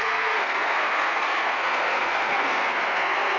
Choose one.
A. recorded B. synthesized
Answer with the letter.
B